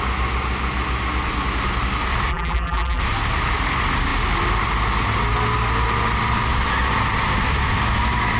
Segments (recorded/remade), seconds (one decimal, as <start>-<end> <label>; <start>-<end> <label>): 0.0-2.3 recorded; 2.3-3.0 remade; 3.0-8.4 recorded